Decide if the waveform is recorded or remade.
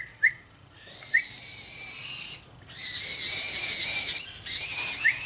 recorded